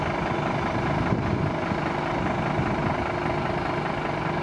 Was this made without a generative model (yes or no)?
yes